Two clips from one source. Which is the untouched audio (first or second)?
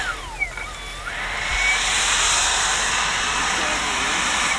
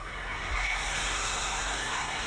first